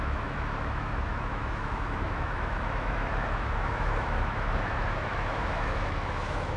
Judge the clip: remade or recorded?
remade